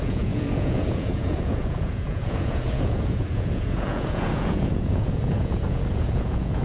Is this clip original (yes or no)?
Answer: no